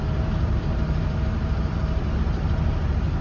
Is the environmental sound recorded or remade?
remade